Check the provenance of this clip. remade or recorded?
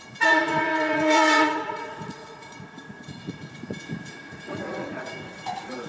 remade